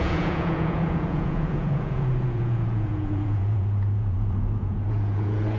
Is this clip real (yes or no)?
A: no